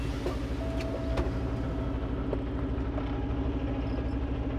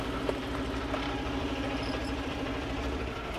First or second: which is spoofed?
second